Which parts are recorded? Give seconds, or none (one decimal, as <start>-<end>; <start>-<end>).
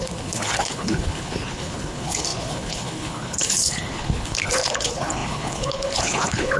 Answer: none